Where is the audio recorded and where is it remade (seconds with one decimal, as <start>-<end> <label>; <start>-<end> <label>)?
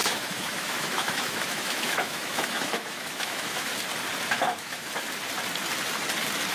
0.0-3.7 remade; 3.7-4.3 recorded; 4.3-4.8 remade; 4.8-6.5 recorded